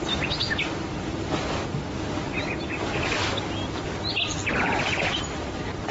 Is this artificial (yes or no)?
no